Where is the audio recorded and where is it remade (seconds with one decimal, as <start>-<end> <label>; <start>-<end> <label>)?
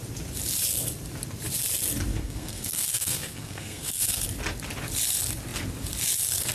0.0-2.1 recorded; 2.1-4.2 remade; 4.2-6.5 recorded